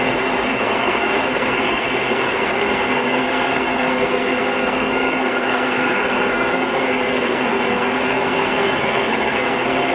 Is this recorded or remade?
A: remade